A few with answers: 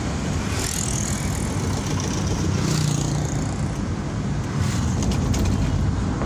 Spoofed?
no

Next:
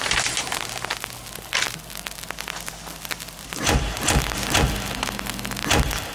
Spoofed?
no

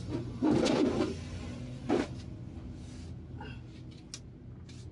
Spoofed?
no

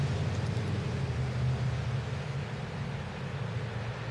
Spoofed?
no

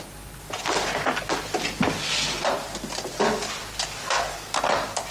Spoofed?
no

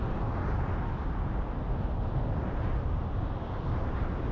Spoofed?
no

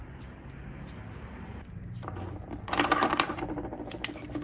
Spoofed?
no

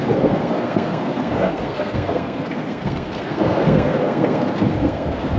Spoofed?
yes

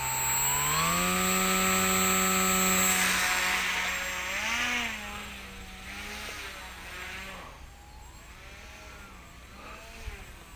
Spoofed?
no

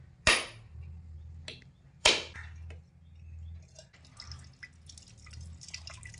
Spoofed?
no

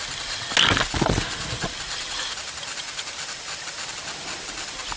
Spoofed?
no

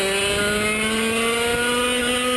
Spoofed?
no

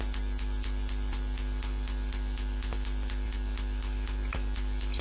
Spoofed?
no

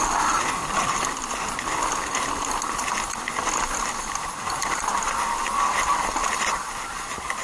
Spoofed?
no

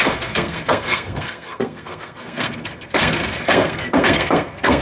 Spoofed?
yes